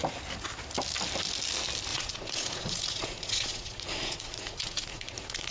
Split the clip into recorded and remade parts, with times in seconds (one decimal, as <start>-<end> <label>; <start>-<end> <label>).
0.0-1.9 recorded; 1.9-5.5 remade